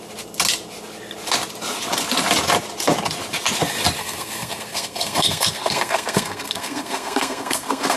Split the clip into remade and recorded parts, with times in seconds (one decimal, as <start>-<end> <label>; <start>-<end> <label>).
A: 0.0-4.0 recorded; 4.0-8.0 remade